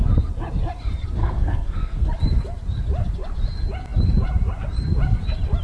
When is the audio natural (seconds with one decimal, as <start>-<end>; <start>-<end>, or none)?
0.0-1.2; 2.1-5.6